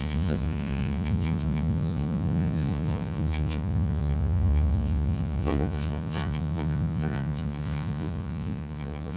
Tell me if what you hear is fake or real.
fake